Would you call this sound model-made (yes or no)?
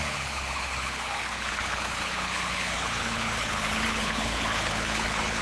yes